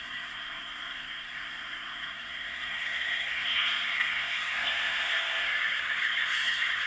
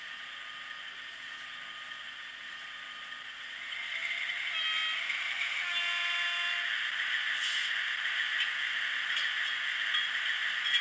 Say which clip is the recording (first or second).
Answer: second